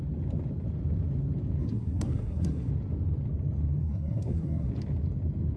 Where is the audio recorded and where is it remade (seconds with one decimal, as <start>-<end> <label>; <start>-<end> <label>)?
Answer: 0.0-1.6 recorded; 1.6-2.7 remade; 2.7-3.8 recorded; 3.8-4.7 remade; 4.7-5.6 recorded